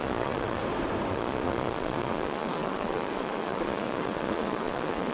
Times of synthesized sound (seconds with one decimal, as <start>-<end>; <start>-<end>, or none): 0.0-0.6; 1.1-5.1